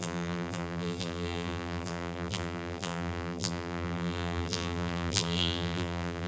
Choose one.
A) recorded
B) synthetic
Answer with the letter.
B